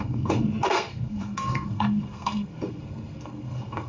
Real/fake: fake